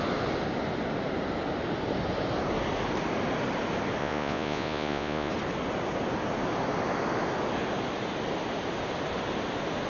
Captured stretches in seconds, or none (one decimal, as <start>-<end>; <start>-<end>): 0.0-4.0; 5.3-9.9